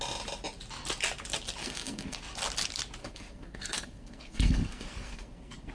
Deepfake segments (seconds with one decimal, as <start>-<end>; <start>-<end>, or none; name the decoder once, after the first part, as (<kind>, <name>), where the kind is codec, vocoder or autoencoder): 1.6-2.2 (codec, SNAC); 3.0-5.7